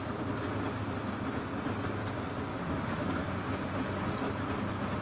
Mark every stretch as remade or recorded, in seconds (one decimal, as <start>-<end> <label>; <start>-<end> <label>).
0.0-2.5 recorded; 2.5-3.2 remade; 3.2-5.0 recorded